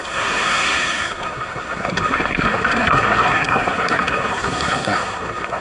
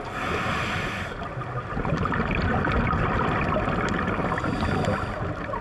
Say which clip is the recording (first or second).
second